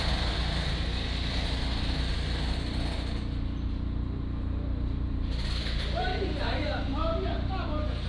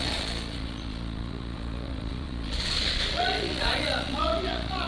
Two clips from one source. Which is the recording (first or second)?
first